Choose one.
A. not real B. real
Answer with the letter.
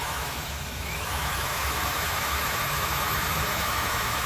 A